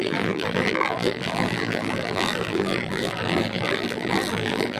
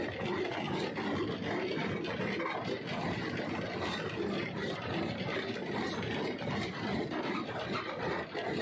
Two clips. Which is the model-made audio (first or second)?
first